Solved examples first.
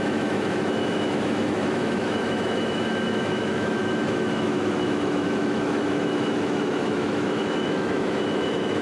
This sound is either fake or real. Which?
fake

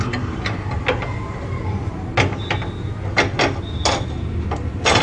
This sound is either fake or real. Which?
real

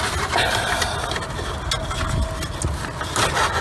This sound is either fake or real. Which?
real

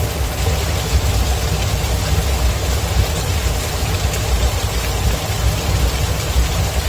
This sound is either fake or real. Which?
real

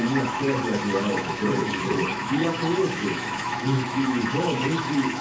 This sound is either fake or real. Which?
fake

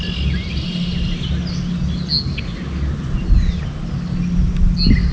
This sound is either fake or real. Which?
real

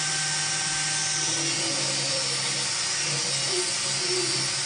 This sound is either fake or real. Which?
real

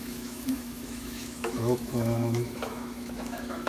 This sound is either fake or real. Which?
fake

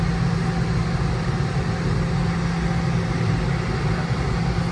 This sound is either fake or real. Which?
real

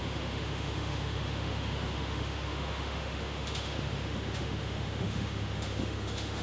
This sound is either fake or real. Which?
fake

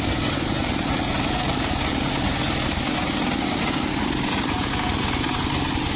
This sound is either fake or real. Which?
real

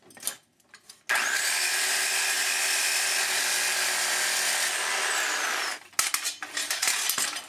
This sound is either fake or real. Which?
real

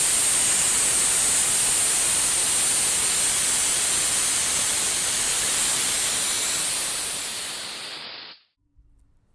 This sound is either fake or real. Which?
real